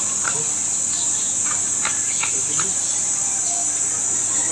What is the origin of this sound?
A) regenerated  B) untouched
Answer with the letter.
B